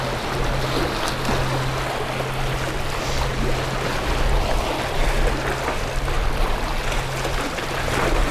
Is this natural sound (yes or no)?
yes